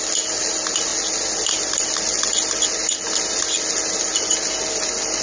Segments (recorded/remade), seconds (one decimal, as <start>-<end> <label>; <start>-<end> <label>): 0.0-5.2 recorded